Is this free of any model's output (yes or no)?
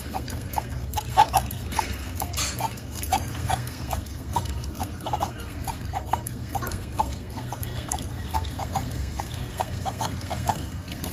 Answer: no